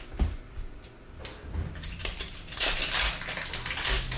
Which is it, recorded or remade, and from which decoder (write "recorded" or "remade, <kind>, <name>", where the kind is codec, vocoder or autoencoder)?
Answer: recorded